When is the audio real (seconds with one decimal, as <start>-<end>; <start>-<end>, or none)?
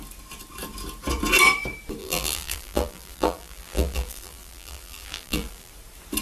0.0-2.0; 5.7-6.2